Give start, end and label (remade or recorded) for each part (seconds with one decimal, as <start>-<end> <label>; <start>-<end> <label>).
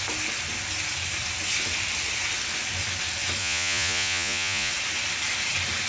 0.0-3.4 recorded; 3.4-4.7 remade; 4.7-5.9 recorded